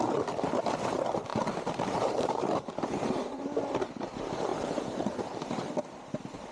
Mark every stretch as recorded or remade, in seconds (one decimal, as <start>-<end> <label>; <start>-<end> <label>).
0.0-1.3 recorded; 1.3-2.7 remade; 2.7-6.5 recorded